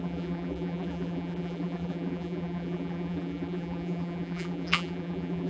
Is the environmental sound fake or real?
fake